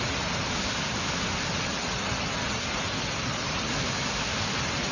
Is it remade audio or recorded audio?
recorded